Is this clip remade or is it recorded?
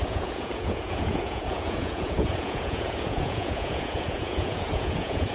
remade